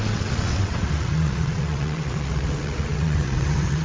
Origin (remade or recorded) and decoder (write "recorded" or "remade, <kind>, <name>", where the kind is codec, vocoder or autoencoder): remade, vocoder, WaveNeXt